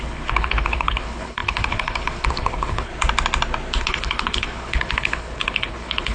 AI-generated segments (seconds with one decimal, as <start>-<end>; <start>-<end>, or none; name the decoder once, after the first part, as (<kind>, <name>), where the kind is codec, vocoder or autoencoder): 0.0-2.9 (codec, HILCodec); 3.8-6.1